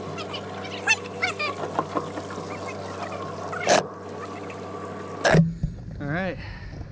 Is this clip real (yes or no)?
yes